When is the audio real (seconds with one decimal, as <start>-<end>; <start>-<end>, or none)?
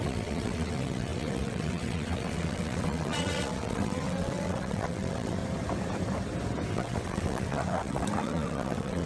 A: 5.4-6.7